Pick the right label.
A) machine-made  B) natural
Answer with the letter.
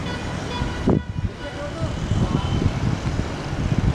B